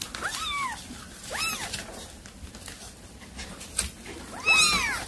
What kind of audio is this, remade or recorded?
recorded